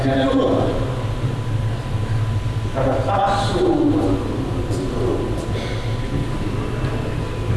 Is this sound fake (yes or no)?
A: no